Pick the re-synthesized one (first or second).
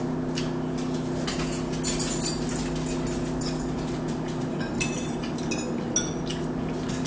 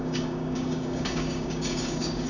second